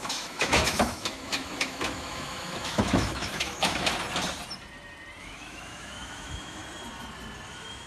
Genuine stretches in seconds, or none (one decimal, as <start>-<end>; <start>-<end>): 3.9-5.2; 6.6-7.5